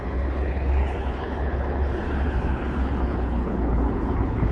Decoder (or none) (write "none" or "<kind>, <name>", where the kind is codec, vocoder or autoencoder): codec, HILCodec